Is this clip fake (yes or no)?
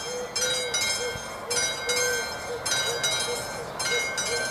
no